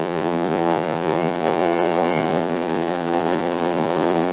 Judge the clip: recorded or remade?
remade